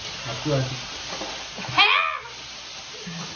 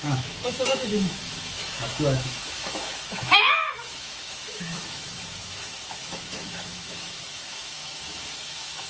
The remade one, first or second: second